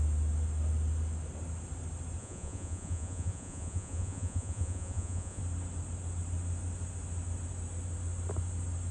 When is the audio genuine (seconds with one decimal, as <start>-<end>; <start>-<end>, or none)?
0.0-2.2; 5.4-8.9